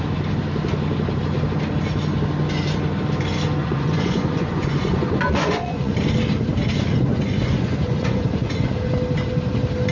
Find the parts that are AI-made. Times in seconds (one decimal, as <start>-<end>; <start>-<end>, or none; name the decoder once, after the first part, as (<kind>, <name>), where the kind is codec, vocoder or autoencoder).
3.6-5.9 (vocoder, Vocos); 7.1-8.7